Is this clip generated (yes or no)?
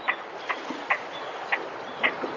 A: no